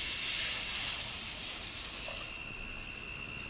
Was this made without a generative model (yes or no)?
yes